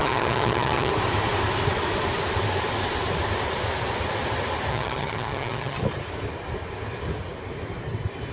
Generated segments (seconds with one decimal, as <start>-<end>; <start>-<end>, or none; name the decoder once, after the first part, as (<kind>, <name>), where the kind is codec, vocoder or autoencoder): 0.0-0.9 (vocoder, HiFi-GAN); 4.7-5.8